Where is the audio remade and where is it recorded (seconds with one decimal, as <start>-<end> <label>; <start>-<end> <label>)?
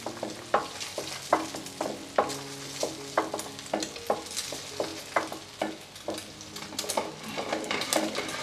0.0-8.4 recorded